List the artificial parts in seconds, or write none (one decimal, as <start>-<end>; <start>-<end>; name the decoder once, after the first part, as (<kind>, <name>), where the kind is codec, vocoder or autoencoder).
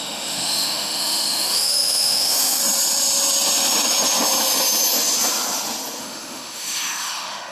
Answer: 0.0-2.6 (autoencoder, DAC-VAE); 6.0-7.5